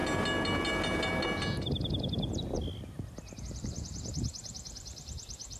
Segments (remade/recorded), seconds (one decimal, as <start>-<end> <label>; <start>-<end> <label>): 0.0-3.4 recorded; 3.4-5.6 remade